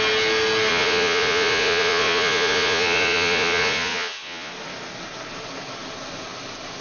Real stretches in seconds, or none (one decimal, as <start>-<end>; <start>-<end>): 0.0-0.7; 4.5-6.8